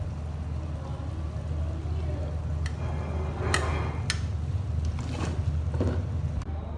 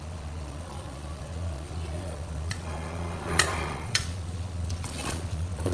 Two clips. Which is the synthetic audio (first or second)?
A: second